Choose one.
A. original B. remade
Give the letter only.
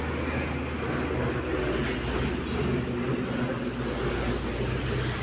A